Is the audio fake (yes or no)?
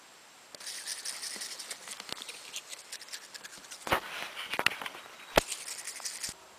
no